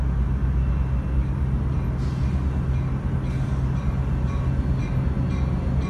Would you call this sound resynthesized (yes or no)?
no